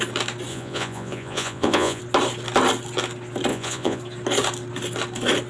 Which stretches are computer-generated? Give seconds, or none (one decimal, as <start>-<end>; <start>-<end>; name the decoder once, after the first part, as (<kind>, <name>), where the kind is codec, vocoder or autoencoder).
0.5-2.0 (vocoder, Vocos); 3.5-4.0